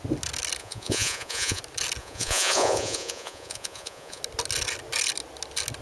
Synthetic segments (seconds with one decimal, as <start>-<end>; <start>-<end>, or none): 0.6-1.6; 2.0-4.2